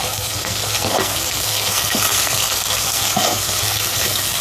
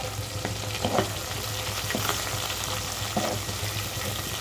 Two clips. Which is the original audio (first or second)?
second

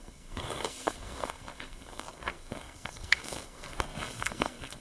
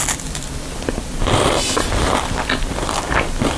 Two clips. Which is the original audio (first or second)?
second